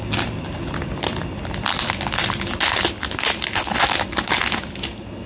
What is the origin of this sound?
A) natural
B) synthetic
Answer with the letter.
A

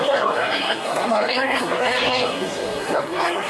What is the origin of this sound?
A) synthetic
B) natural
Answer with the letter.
A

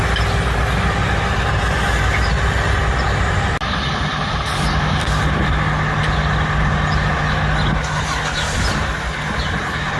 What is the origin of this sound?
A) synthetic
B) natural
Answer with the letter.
B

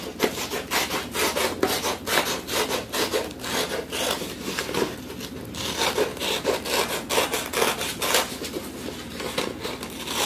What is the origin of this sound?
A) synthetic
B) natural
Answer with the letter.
B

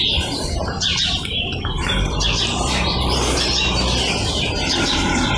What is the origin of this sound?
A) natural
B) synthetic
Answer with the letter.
B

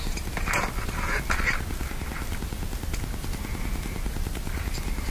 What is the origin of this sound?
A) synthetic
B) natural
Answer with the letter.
B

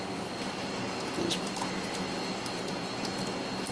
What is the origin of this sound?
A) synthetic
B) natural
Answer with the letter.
B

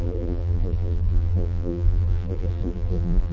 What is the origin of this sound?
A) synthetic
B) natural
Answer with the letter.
A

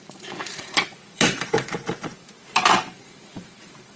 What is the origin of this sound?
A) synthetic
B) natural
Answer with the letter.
A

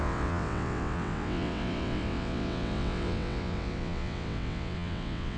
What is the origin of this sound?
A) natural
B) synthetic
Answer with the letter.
B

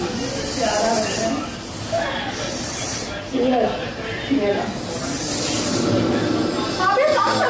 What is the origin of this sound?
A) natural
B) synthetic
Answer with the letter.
A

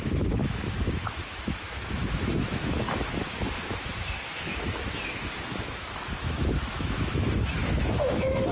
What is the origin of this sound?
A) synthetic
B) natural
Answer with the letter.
A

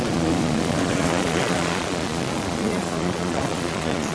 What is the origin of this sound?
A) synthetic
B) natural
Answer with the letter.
A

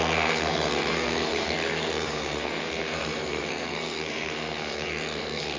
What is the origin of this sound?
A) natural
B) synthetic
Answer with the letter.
B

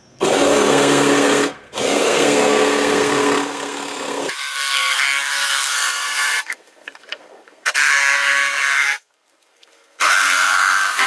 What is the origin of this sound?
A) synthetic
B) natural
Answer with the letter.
A